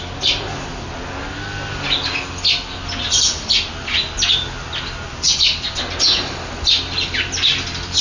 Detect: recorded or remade recorded